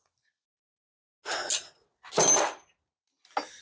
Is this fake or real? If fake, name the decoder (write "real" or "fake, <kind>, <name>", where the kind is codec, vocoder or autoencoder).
real